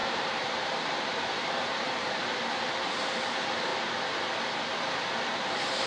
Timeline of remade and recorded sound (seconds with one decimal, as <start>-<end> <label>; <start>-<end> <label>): 0.0-3.7 remade; 3.7-5.5 recorded; 5.5-5.9 remade